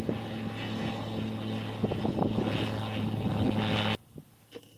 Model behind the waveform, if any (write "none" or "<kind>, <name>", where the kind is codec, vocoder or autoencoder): none